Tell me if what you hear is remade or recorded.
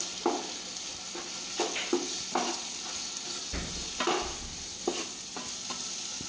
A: recorded